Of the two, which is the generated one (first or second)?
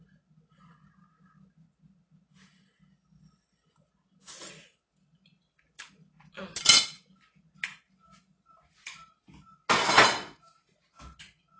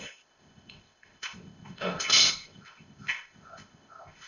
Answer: second